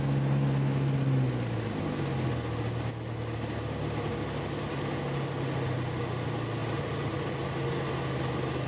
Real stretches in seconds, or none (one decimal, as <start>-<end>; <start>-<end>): 0.0-8.7